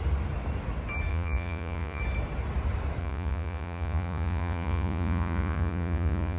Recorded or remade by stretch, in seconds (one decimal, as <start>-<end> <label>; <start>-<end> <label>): 0.0-1.1 recorded; 1.1-2.0 remade; 2.0-3.0 recorded; 3.0-6.4 remade